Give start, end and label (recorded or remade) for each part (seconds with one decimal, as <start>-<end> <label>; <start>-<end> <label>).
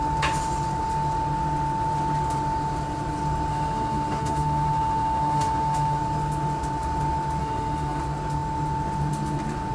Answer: 0.0-3.5 recorded; 3.5-6.0 remade; 6.0-7.4 recorded; 7.4-8.0 remade; 8.0-9.7 recorded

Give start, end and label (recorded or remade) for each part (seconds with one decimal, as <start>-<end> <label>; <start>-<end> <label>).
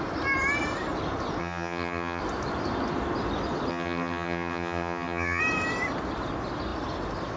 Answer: 0.0-1.4 recorded; 1.4-2.2 remade; 2.2-3.7 recorded; 3.7-5.4 remade; 5.4-7.4 recorded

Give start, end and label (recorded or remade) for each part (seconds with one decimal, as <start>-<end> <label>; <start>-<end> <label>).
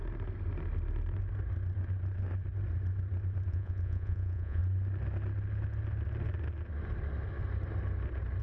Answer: 0.0-3.5 recorded; 3.5-4.6 remade; 4.6-8.4 recorded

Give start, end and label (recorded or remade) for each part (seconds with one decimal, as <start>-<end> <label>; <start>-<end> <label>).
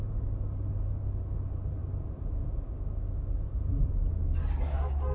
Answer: 0.0-1.8 recorded; 1.8-2.7 remade; 2.7-5.1 recorded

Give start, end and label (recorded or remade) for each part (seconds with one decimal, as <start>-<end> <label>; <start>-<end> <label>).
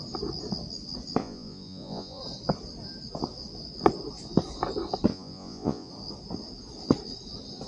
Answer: 0.0-1.2 recorded; 1.2-2.2 remade; 2.2-5.1 recorded; 5.1-5.9 remade; 5.9-7.7 recorded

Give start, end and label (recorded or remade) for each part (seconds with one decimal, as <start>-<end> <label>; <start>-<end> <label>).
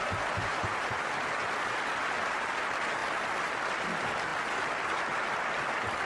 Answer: 0.0-0.5 recorded; 0.5-1.0 remade; 1.0-6.0 recorded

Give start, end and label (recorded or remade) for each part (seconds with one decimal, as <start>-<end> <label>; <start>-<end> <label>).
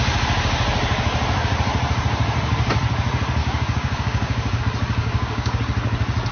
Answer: 0.0-3.4 recorded; 3.4-4.6 remade; 4.6-5.0 recorded; 5.0-5.6 remade; 5.6-6.3 recorded